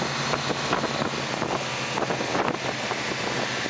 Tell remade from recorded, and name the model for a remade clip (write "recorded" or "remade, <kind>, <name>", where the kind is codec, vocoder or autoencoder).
recorded